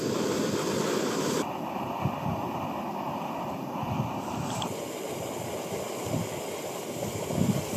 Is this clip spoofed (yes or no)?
no